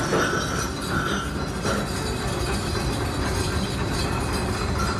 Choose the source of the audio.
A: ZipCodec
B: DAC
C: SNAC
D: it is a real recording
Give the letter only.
D